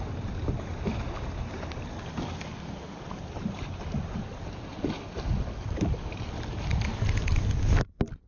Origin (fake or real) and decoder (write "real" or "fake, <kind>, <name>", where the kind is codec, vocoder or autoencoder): real